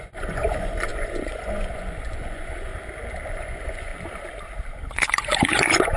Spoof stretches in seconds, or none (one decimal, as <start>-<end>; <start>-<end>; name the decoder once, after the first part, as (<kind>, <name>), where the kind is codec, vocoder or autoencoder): 0.0-2.7 (vocoder, Vocos); 3.3-3.9; 4.9-6.0